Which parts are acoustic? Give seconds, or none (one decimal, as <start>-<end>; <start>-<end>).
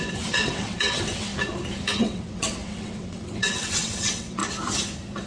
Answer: 1.3-2.0; 4.4-5.3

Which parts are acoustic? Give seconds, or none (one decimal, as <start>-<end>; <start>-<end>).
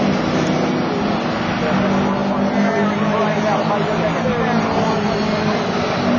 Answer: 0.0-6.2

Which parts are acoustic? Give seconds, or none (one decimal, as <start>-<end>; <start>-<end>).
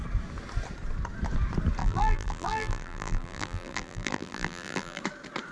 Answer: 0.0-1.8; 5.0-5.5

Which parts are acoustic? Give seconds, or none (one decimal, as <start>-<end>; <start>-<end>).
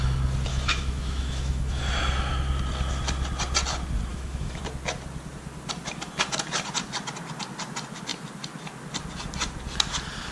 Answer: 0.0-0.5; 1.8-4.1; 4.6-10.3